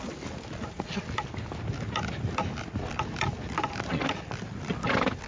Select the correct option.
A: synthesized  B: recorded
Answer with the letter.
B